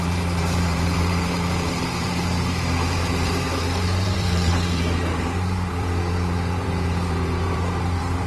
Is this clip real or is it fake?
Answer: fake